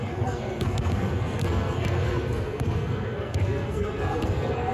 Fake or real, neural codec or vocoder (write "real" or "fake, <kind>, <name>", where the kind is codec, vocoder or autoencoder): fake, codec, SNAC